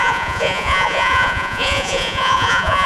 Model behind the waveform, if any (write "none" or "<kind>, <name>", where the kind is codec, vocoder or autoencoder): vocoder, Vocos